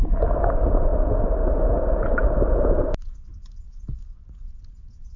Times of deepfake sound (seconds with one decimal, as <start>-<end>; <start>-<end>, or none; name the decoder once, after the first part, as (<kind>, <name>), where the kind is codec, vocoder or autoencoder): none